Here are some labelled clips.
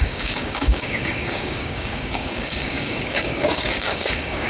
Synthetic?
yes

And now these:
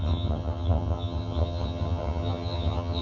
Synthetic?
yes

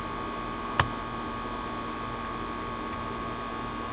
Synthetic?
no